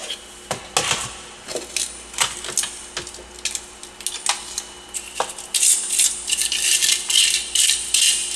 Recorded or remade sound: recorded